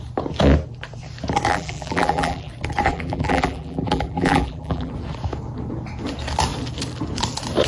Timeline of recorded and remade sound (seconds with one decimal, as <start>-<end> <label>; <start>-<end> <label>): 0.0-1.5 recorded; 1.5-2.5 remade; 2.5-2.9 recorded; 2.9-4.9 remade; 4.9-7.7 recorded